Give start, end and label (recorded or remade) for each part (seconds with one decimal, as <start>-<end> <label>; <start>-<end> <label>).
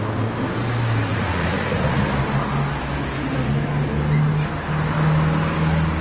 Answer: 0.0-1.1 recorded; 1.1-2.1 remade; 2.1-6.0 recorded